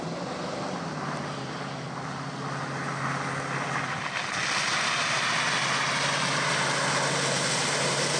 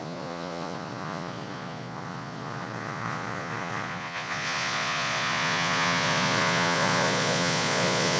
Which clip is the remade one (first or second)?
second